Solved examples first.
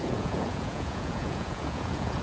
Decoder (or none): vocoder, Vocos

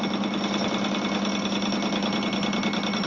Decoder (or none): none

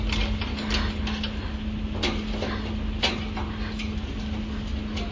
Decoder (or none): none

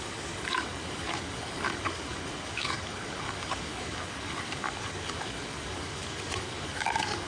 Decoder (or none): codec, DAC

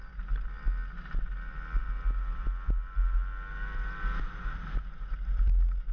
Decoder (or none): none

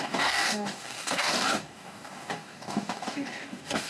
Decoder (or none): codec, DAC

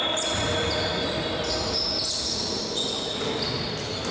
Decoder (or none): none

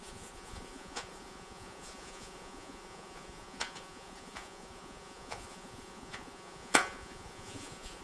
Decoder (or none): vocoder, Vocos